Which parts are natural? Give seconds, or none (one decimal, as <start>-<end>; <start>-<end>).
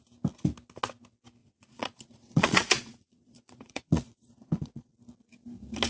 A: 0.0-1.4; 4.9-5.9